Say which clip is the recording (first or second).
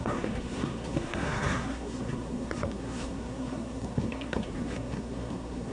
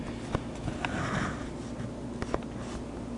second